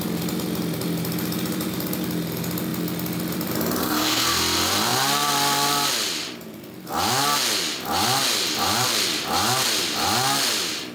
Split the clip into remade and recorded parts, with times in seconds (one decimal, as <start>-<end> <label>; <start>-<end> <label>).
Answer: 0.0-3.8 recorded; 3.8-4.4 remade; 4.4-10.9 recorded